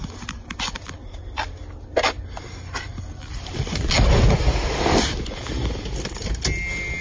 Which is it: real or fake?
real